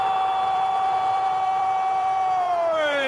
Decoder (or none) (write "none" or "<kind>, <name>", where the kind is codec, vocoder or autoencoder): vocoder, BigVGAN v2